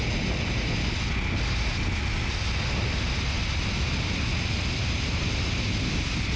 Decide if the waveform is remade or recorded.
recorded